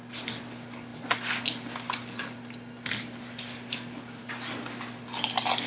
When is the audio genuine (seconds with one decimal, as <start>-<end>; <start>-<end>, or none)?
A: 0.0-5.7

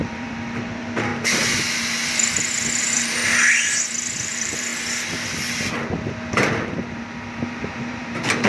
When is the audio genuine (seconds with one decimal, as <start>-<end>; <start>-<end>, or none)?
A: 1.1-2.8; 3.2-4.2; 4.7-7.6

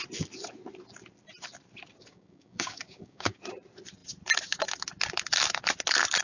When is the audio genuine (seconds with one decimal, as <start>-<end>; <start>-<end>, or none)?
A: 0.0-2.1; 3.4-6.2

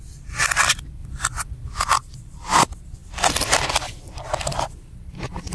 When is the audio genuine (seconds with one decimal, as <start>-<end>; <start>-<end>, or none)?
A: none

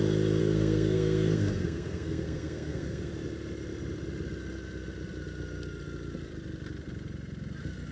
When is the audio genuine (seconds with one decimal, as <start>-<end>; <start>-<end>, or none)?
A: 0.0-0.4; 3.1-7.9

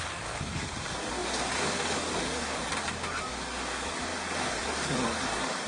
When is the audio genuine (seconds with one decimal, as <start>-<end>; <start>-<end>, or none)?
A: none